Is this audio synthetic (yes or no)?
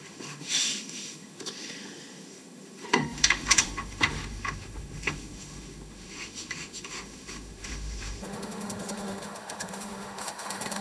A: yes